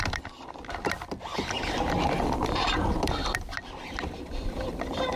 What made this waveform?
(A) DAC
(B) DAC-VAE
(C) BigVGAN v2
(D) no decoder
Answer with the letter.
D